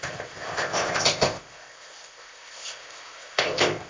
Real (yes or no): no